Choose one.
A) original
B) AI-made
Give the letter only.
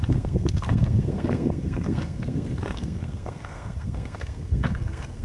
B